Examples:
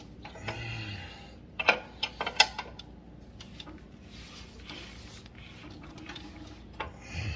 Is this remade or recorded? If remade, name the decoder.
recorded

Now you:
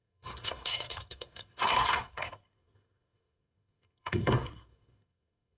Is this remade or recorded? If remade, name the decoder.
remade, codec, SNAC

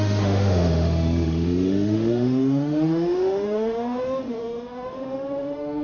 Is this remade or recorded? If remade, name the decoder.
remade, autoencoder, DAC-VAE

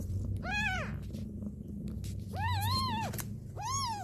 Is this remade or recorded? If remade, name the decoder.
recorded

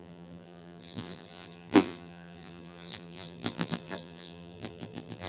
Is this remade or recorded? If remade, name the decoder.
remade, vocoder, BigVGAN v2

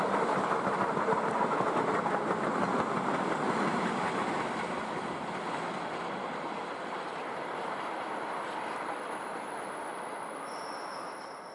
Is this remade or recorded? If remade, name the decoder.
recorded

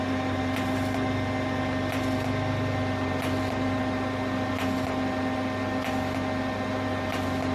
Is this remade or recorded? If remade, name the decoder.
recorded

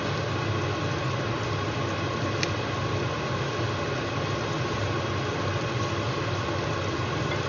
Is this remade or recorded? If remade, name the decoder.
recorded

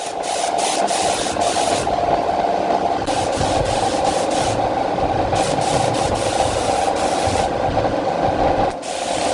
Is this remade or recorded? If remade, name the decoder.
recorded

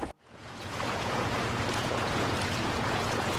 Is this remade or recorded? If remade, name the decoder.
remade, vocoder, Vocos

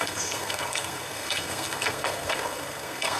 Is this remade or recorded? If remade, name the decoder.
remade, codec, SNAC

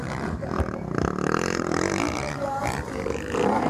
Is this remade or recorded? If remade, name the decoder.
remade, vocoder, BigVGAN v2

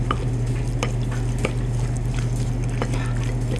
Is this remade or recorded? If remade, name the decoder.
recorded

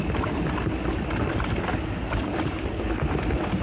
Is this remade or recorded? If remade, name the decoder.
recorded